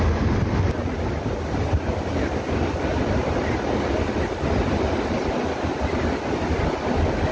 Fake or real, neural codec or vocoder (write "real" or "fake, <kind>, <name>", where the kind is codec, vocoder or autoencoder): real